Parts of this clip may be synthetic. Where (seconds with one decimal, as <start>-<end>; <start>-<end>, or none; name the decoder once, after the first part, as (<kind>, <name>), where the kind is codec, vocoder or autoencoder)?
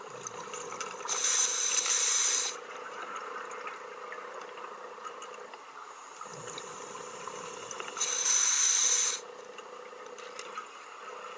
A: none